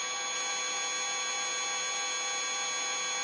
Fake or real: real